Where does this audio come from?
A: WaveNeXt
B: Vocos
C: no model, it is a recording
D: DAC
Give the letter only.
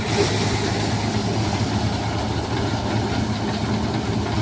C